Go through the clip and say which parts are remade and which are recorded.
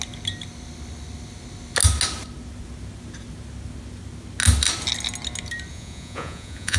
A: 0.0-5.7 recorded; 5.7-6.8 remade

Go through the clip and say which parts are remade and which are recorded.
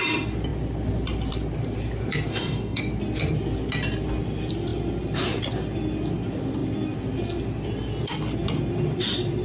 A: 0.0-2.3 recorded; 2.3-2.8 remade; 2.8-9.4 recorded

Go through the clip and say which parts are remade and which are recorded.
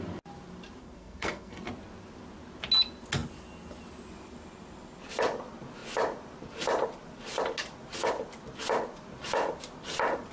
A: 0.0-0.8 recorded; 0.8-1.6 remade; 1.6-10.3 recorded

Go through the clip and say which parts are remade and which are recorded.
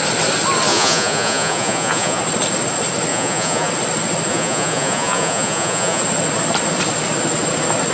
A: 0.0-0.7 recorded; 0.7-2.2 remade; 2.2-3.1 recorded; 3.1-3.7 remade; 3.7-4.3 recorded; 4.3-6.0 remade; 6.0-7.9 recorded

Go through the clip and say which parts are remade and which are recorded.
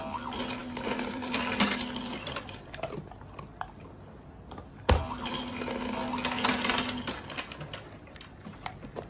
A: 0.0-0.6 recorded; 0.6-5.5 remade; 5.5-9.1 recorded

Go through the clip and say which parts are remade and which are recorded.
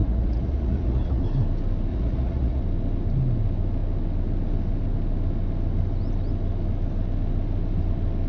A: 0.0-1.2 remade; 1.2-1.9 recorded; 1.9-2.6 remade; 2.6-8.3 recorded